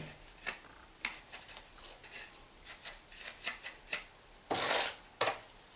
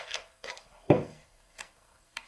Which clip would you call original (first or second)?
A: first